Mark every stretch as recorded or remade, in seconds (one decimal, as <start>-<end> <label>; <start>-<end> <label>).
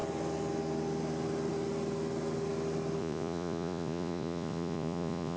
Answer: 0.0-3.0 recorded; 3.0-5.4 remade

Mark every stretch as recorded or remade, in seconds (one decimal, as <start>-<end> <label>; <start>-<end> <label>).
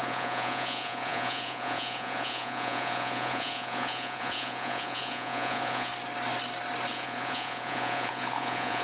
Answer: 0.0-5.9 remade; 5.9-6.9 recorded; 6.9-8.8 remade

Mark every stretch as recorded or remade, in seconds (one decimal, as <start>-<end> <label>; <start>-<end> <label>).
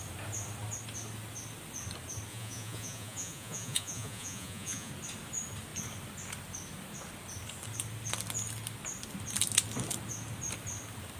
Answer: 0.0-2.3 recorded; 2.3-4.9 remade; 4.9-11.2 recorded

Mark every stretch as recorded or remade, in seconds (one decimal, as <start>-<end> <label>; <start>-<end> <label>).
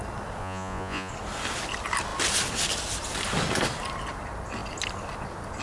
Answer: 0.0-0.4 recorded; 0.4-1.1 remade; 1.1-5.6 recorded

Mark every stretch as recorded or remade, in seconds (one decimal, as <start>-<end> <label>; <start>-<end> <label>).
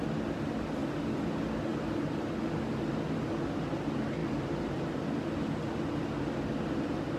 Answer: 0.0-7.2 recorded